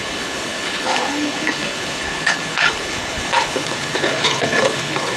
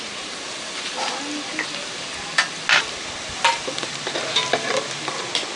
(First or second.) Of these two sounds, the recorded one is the second